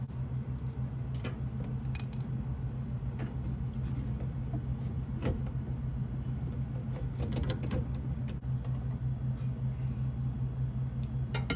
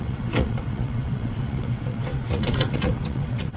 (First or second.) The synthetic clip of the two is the second